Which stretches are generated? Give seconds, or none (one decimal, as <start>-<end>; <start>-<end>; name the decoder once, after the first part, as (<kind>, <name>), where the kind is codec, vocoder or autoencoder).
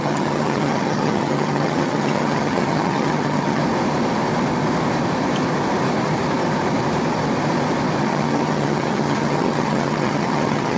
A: 0.0-3.6 (vocoder, HiFi-GAN); 8.0-10.8